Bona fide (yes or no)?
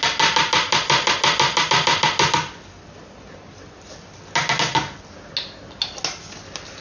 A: yes